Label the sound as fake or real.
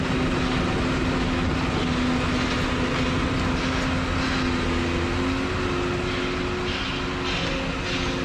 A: real